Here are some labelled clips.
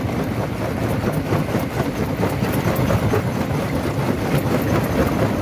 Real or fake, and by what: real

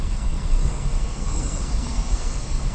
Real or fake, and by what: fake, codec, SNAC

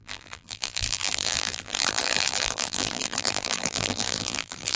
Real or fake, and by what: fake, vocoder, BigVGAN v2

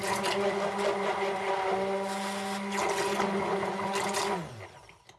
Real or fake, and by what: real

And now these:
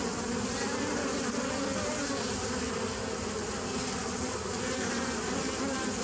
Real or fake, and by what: real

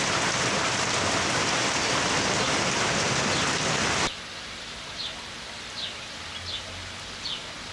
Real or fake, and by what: real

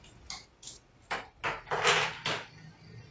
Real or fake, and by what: real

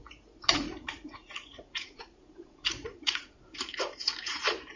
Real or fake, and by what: fake, vocoder, Vocos